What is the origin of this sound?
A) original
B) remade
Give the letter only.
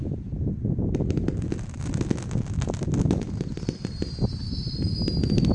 A